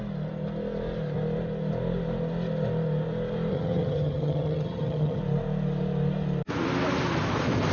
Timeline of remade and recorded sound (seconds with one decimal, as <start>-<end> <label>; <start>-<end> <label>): 0.0-3.5 recorded; 3.5-5.2 remade; 5.2-7.7 recorded